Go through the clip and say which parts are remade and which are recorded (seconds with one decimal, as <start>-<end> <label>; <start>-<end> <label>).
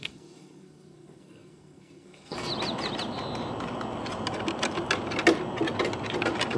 0.0-2.5 remade; 2.5-6.6 recorded